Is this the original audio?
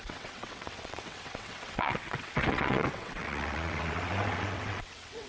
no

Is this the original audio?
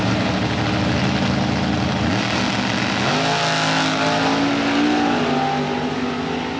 yes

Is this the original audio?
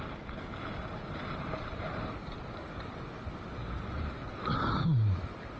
yes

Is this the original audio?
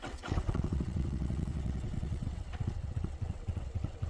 no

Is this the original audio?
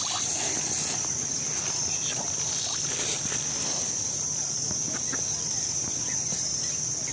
yes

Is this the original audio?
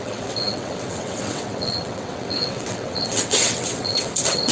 no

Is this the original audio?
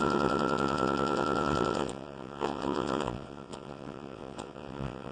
no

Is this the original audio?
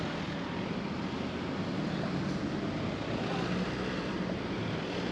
yes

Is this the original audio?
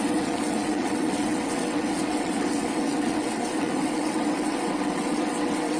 no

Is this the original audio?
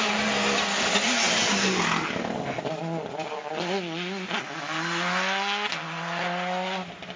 yes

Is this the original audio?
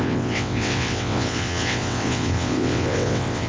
no